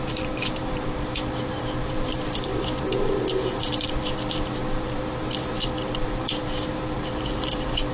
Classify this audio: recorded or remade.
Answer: remade